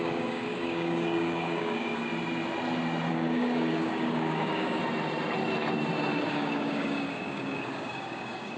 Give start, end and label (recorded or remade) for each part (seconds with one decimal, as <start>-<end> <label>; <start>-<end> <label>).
0.0-2.1 remade; 2.1-3.1 recorded; 3.1-4.8 remade; 4.8-6.3 recorded; 6.3-8.6 remade